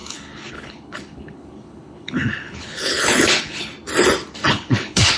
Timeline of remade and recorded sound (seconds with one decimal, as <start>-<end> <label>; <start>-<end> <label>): 0.0-3.7 remade; 3.7-4.5 recorded; 4.5-5.2 remade